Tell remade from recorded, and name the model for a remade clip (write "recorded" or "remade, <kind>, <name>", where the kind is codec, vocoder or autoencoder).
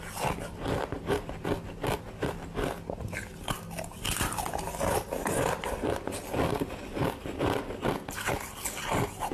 recorded